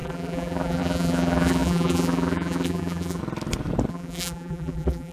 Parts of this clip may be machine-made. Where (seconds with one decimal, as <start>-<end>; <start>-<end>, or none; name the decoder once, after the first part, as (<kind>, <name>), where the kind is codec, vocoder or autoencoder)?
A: 0.0-3.2 (vocoder, BigVGAN v2); 3.9-5.1